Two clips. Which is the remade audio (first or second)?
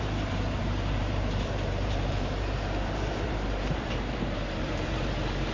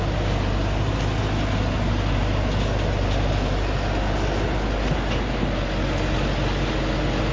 first